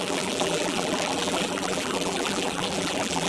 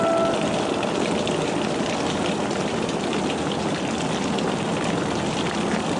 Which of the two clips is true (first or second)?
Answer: second